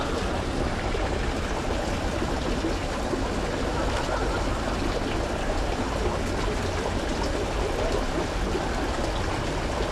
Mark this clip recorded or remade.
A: recorded